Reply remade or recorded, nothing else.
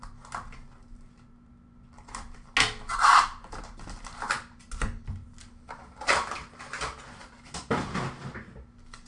recorded